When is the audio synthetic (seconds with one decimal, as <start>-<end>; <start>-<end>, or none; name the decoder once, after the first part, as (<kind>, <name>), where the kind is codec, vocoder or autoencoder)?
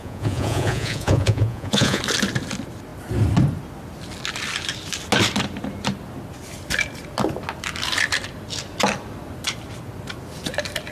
0.0-2.0 (vocoder, Vocos)